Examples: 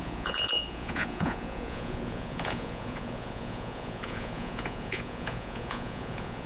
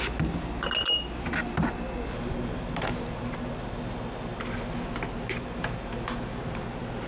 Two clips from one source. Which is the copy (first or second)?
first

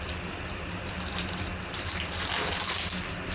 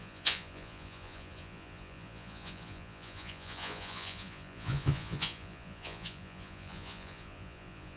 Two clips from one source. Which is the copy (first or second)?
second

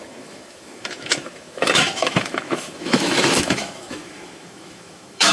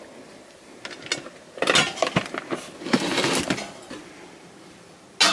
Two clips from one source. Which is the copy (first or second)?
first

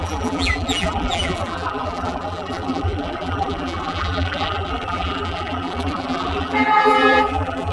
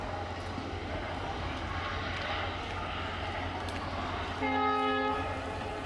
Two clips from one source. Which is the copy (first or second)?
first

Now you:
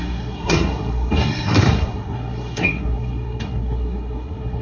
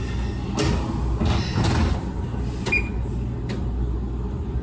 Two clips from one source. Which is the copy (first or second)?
first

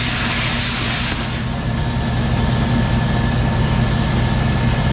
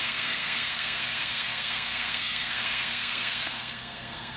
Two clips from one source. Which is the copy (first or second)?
second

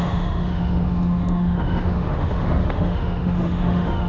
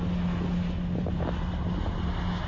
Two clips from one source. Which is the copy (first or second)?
first